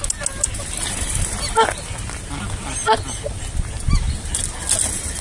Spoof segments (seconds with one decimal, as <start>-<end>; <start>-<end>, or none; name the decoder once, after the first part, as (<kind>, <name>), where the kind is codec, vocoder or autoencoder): none